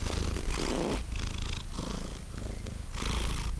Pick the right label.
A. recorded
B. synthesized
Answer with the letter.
A